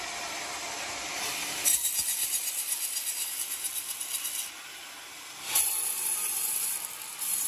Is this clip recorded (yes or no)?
no